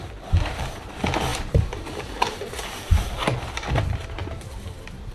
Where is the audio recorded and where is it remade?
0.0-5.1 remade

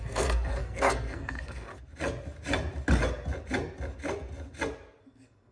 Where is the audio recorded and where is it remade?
0.0-1.7 remade; 1.7-5.0 recorded; 5.0-5.5 remade